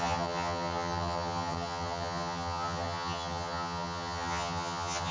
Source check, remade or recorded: remade